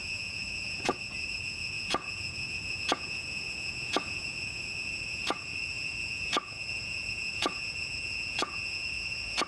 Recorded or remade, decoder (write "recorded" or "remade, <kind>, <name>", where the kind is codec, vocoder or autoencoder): remade, vocoder, Vocos